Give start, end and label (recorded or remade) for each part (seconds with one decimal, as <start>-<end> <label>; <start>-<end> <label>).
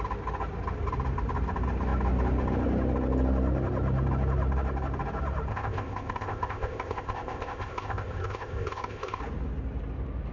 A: 0.0-5.5 recorded; 5.5-9.2 remade; 9.2-10.3 recorded